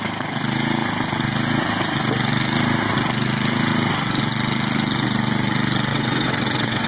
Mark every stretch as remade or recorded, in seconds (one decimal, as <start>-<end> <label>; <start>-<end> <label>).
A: 0.0-5.9 recorded; 5.9-6.9 remade